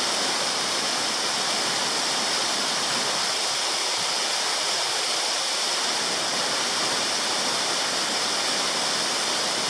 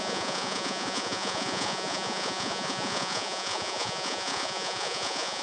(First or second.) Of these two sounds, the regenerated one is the second